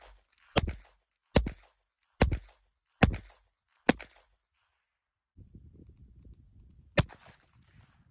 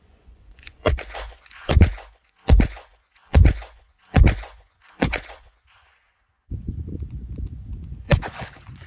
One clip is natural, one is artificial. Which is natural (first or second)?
first